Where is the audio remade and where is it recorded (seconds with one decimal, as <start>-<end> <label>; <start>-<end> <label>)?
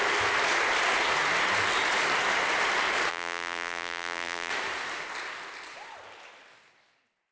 0.0-3.1 recorded; 3.1-4.5 remade; 4.5-7.3 recorded